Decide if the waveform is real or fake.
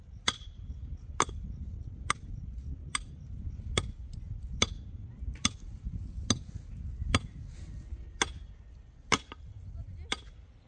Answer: real